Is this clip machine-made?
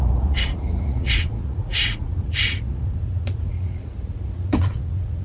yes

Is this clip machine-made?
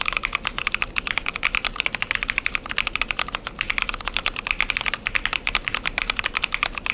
no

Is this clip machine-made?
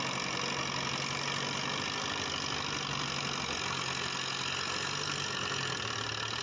no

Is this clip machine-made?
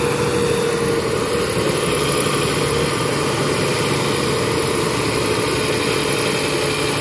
no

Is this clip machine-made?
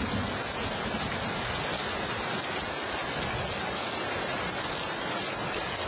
no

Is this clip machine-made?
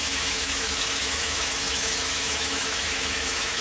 yes